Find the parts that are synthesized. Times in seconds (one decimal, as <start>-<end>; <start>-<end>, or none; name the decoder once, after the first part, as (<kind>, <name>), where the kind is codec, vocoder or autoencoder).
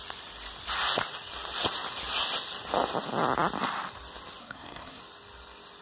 4.4-5.0 (codec, SNAC)